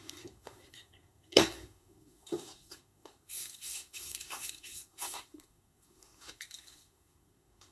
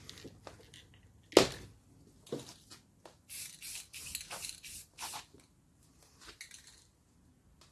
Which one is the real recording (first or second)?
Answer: second